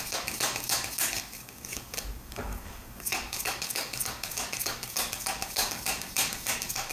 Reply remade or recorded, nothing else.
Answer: remade